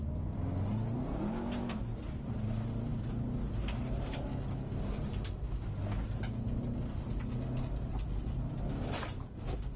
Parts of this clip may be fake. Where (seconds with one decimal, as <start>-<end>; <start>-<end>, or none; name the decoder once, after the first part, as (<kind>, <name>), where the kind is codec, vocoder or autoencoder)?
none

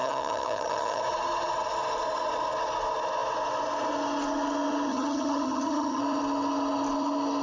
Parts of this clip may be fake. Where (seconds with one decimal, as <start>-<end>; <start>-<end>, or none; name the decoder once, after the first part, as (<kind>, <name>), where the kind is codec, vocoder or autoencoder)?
0.0-1.0 (vocoder, HiFi-GAN); 4.9-6.0

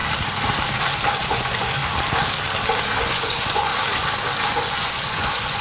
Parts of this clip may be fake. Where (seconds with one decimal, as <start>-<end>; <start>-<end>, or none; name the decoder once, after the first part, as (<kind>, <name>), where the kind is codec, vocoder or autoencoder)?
1.2-1.8 (vocoder, Vocos); 3.0-3.7; 4.5-5.6

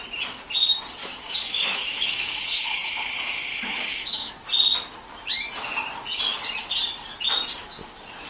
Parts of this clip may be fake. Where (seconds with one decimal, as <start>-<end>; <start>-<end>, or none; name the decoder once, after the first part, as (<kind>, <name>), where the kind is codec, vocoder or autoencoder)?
1.0-2.9 (autoencoder, DAC-VAE); 3.5-4.3

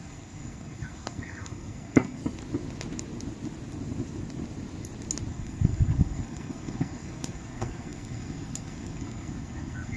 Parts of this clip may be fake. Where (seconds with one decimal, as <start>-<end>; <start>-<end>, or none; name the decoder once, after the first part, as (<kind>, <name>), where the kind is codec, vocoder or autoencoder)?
0.0-2.2 (codec, SNAC); 5.3-10.0